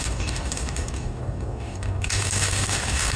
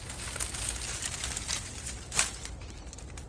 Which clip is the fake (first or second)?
first